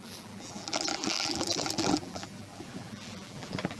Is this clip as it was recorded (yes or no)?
no